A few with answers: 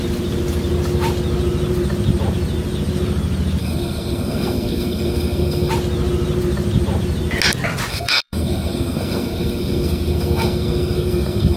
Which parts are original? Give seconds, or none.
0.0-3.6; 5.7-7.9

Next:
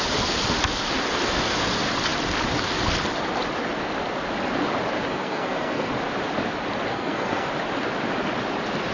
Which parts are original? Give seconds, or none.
0.0-5.1; 5.9-6.9; 7.5-8.9

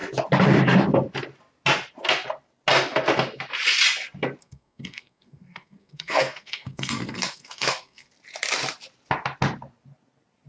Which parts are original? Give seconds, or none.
0.0-4.4; 8.1-10.5

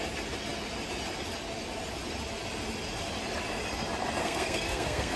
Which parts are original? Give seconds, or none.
0.0-4.2

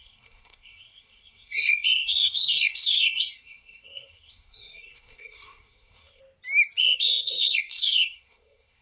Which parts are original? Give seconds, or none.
6.2-6.8